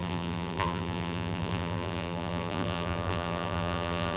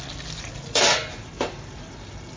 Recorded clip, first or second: second